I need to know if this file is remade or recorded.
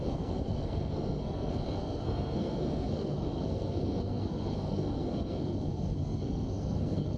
remade